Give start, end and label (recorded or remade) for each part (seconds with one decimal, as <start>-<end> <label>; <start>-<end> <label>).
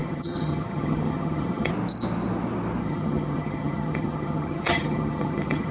0.0-1.7 remade; 1.7-2.8 recorded; 2.8-5.7 remade